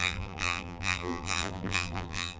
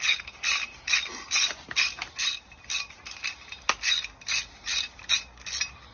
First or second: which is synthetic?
first